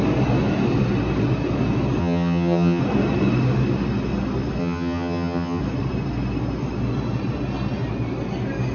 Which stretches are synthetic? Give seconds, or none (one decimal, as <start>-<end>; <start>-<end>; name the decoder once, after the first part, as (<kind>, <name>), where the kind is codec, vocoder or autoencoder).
2.0-2.8 (vocoder, HiFi-GAN); 4.6-5.6